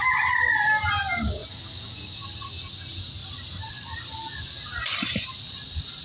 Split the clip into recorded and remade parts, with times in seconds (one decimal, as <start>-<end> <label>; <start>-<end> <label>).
0.0-1.4 remade; 1.4-2.7 recorded; 2.7-6.0 remade